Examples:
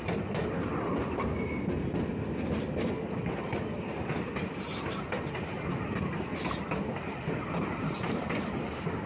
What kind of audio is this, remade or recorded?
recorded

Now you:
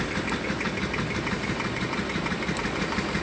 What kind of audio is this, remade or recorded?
recorded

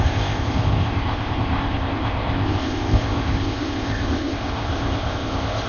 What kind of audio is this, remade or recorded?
remade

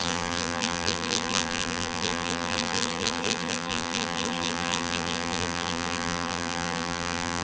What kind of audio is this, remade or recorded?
remade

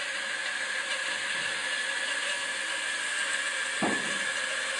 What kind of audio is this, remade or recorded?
recorded